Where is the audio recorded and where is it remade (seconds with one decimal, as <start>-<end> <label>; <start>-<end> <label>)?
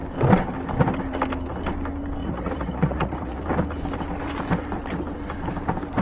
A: 0.0-2.2 recorded; 2.2-3.4 remade; 3.4-6.0 recorded